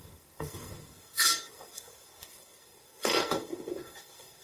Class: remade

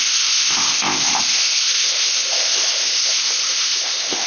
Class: remade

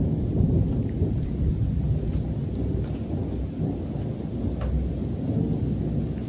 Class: recorded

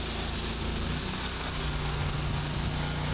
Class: recorded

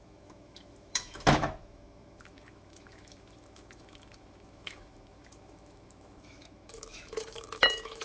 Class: remade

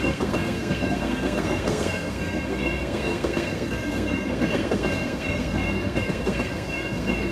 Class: remade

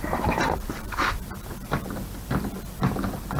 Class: remade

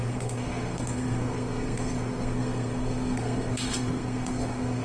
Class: remade